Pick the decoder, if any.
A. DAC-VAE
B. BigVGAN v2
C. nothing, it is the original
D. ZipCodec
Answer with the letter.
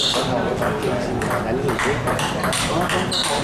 C